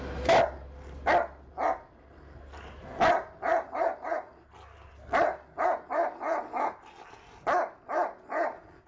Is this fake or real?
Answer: real